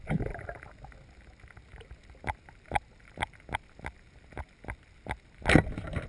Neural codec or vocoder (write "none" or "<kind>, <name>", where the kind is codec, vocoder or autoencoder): none